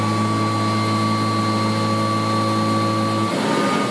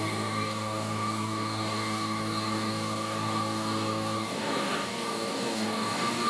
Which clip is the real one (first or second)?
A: first